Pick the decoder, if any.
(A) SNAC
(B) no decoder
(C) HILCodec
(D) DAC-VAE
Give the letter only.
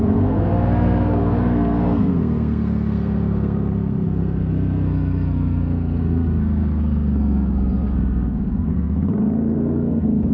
A